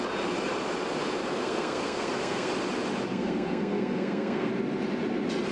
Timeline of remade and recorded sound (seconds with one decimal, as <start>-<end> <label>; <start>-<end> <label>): 0.0-1.3 recorded; 1.3-2.5 remade; 2.5-3.1 recorded; 3.1-4.5 remade; 4.5-5.5 recorded